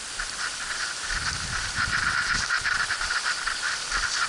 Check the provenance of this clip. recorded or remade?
recorded